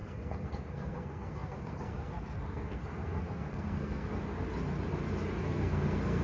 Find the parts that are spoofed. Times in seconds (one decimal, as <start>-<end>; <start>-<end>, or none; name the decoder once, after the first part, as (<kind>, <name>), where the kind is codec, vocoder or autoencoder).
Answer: 0.0-4.1 (codec, SNAC); 5.4-6.2